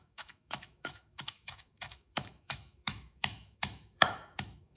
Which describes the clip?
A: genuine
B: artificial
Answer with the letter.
B